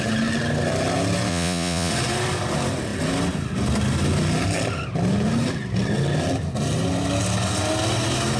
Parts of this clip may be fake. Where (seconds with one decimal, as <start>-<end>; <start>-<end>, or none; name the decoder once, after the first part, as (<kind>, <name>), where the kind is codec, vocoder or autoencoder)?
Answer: 1.3-1.9 (vocoder, Vocos)